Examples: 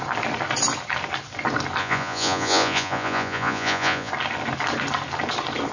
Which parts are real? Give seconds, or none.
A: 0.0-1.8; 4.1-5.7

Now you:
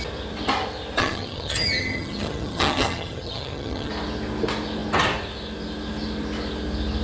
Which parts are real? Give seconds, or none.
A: 0.0-1.0; 3.9-7.0

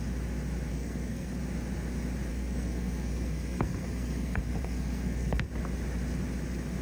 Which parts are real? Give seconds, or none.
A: 0.0-0.7; 1.4-2.3; 5.5-6.8

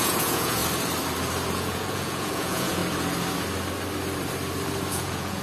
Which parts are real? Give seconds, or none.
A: 0.6-1.5; 2.8-4.9

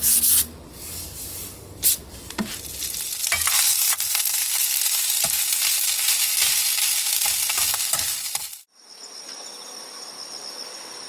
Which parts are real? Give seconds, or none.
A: 0.0-11.1